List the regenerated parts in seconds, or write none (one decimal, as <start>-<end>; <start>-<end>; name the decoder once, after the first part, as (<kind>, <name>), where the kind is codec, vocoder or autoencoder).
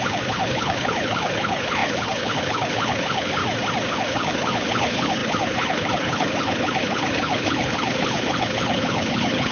0.0-3.4 (codec, HILCodec); 3.9-9.5